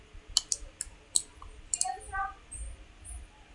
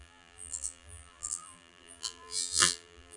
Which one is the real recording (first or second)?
first